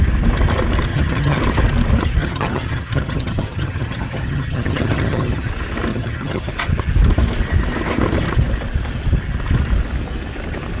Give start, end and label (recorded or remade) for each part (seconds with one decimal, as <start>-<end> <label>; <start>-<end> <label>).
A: 0.0-0.9 recorded; 0.9-1.4 remade; 1.4-2.2 recorded; 2.2-5.5 remade; 5.5-5.9 recorded; 5.9-6.5 remade; 6.5-10.8 recorded